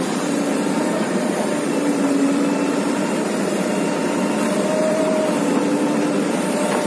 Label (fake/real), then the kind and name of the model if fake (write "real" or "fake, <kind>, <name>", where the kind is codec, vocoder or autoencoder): fake, vocoder, BigVGAN v2